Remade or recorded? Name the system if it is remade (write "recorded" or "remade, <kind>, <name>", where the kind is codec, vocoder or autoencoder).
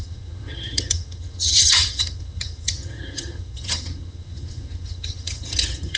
remade, vocoder, HiFi-GAN